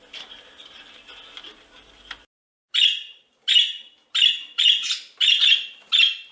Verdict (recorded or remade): recorded